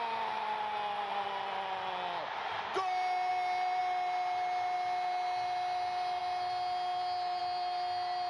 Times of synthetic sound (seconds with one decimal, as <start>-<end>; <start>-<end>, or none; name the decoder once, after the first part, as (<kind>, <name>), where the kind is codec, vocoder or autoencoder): none